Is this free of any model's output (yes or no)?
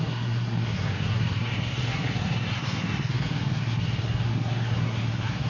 no